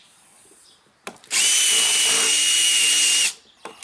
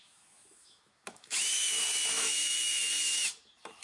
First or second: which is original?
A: first